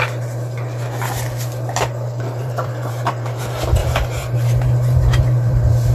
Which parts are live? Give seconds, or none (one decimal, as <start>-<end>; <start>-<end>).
0.0-2.4; 3.4-3.8